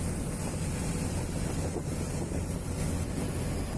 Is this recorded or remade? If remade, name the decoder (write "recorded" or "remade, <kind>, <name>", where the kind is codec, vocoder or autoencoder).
recorded